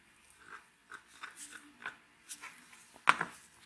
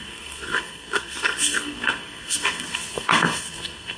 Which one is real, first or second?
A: first